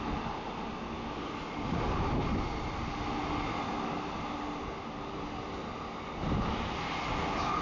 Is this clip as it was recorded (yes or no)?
yes